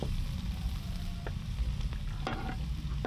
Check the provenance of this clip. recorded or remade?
recorded